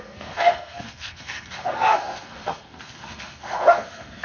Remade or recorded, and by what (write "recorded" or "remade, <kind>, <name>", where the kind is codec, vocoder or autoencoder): remade, codec, SNAC